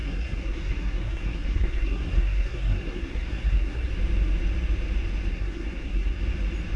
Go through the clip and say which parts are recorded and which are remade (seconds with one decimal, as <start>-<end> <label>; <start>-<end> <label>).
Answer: 0.0-3.9 remade; 3.9-5.3 recorded; 5.3-6.2 remade; 6.2-6.8 recorded